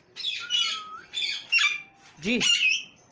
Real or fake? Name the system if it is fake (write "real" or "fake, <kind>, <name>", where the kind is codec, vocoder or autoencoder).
fake, vocoder, BigVGAN v2